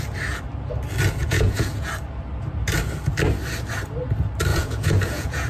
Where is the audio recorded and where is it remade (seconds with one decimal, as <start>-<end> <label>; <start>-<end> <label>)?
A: 0.0-1.2 recorded; 1.2-1.9 remade; 1.9-4.5 recorded; 4.5-5.5 remade